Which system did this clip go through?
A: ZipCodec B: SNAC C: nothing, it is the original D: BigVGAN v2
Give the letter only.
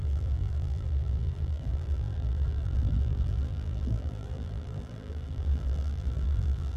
D